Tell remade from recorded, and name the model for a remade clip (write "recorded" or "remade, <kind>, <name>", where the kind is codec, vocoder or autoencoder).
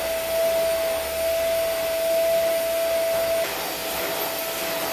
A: recorded